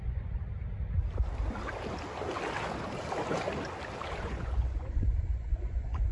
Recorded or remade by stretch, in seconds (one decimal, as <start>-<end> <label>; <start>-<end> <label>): 0.0-0.5 remade; 0.5-4.2 recorded; 4.2-6.1 remade